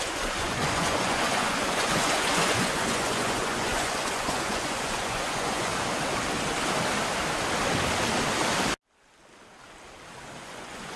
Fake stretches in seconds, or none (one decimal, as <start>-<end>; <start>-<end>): 0.0-5.7; 10.4-11.0